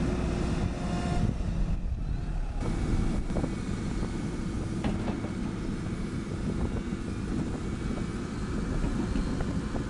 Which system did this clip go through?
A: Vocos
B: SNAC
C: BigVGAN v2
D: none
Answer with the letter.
D